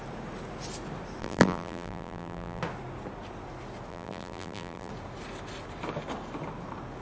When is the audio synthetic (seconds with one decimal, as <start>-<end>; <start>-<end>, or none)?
1.2-2.6; 3.9-4.9